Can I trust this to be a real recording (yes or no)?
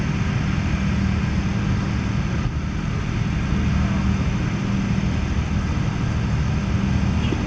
yes